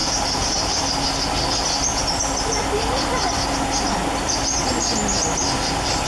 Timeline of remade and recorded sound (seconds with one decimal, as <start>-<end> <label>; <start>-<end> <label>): 0.0-6.1 recorded